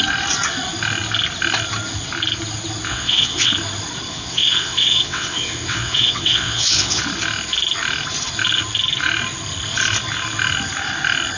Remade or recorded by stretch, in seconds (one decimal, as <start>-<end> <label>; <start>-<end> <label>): 0.0-2.9 recorded; 2.9-3.5 remade; 3.5-4.1 recorded; 4.1-7.0 remade; 7.0-11.4 recorded